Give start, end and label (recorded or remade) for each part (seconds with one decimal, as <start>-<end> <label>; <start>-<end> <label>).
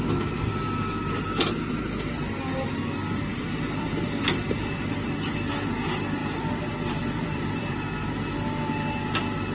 0.0-3.3 recorded; 3.3-5.5 remade; 5.5-6.2 recorded; 6.2-7.7 remade; 7.7-9.5 recorded